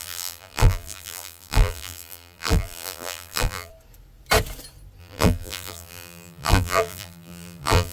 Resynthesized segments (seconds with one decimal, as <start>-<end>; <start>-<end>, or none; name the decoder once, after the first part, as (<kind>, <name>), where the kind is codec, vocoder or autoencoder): 0.0-3.7 (vocoder, BigVGAN v2); 5.0-7.9